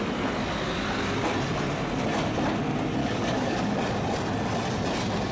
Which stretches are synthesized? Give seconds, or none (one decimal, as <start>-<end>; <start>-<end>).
3.0-3.8